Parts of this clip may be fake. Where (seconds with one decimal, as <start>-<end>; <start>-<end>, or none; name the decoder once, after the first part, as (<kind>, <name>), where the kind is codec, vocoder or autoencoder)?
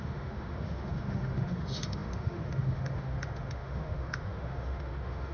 0.0-5.3 (autoencoder, DAC-VAE)